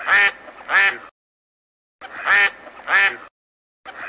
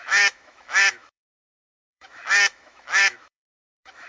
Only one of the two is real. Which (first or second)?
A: first